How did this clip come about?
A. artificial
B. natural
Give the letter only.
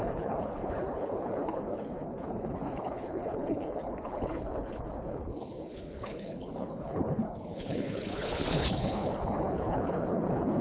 A